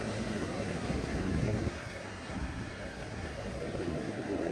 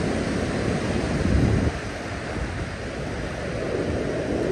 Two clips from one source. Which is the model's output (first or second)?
first